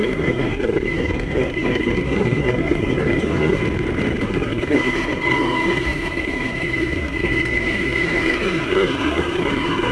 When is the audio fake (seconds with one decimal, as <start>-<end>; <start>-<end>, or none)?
0.0-3.6; 4.2-9.9